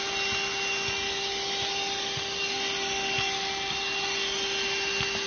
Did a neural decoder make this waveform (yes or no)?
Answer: no